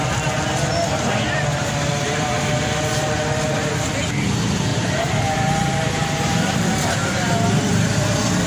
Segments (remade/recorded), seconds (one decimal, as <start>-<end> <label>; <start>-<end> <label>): 0.0-4.7 recorded; 4.7-7.9 remade; 7.9-8.5 recorded